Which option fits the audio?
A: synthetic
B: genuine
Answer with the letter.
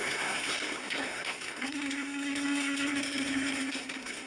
A